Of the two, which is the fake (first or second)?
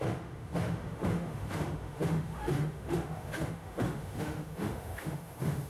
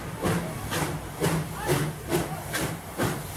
first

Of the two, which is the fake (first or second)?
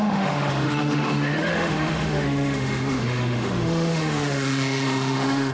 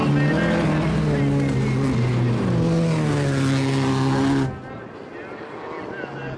first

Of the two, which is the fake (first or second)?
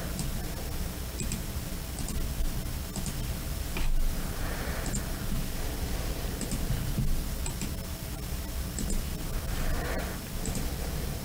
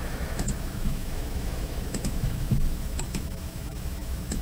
second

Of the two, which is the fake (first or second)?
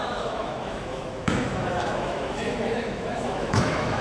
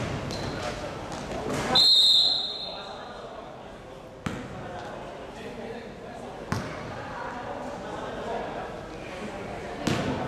first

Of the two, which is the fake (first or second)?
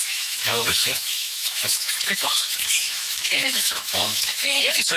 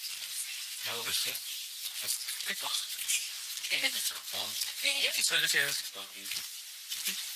first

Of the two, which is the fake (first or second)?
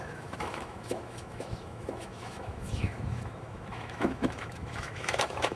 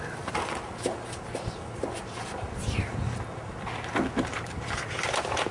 first